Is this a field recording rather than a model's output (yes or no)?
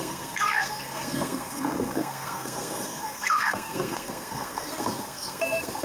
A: no